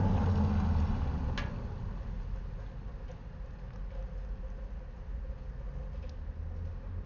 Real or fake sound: real